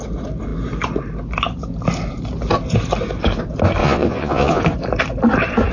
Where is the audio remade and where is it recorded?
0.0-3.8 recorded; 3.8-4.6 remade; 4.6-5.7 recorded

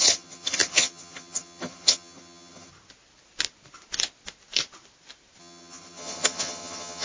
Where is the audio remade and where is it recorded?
0.0-2.7 remade; 2.7-5.4 recorded; 5.4-7.0 remade

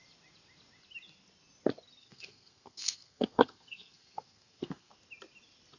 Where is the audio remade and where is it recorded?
0.0-2.0 recorded; 2.0-4.9 remade; 4.9-5.8 recorded

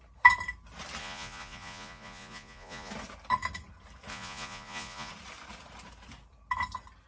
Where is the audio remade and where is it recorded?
0.0-1.0 recorded; 1.0-2.9 remade; 2.9-4.1 recorded; 4.1-5.1 remade; 5.1-7.1 recorded

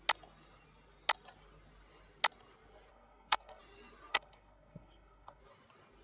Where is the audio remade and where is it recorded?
0.0-2.9 recorded; 2.9-3.6 remade; 3.6-4.1 recorded; 4.1-5.4 remade; 5.4-6.0 recorded